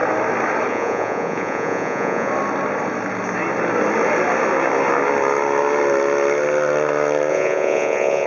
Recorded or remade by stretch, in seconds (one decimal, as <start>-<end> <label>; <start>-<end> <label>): 0.0-0.7 recorded; 0.7-2.3 remade; 2.3-7.3 recorded; 7.3-8.3 remade